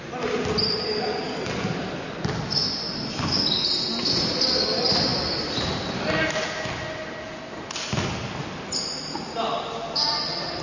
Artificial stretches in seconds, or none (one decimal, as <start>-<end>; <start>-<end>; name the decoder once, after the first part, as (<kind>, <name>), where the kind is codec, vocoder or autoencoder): none